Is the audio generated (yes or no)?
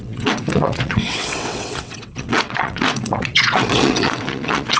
yes